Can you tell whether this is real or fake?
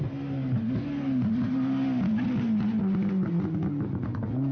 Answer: real